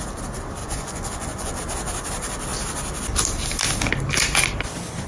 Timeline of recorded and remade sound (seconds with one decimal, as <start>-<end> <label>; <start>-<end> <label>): 0.0-0.6 recorded; 0.6-1.6 remade; 1.6-5.1 recorded